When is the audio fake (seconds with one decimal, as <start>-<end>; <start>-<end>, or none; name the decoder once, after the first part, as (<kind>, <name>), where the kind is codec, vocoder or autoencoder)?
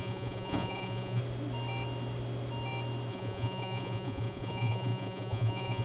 0.0-1.2 (vocoder, Vocos); 3.1-5.8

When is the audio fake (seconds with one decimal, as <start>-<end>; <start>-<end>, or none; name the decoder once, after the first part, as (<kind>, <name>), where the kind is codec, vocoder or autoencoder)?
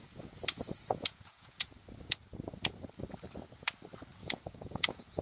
0.0-1.7 (vocoder, Vocos); 4.2-5.2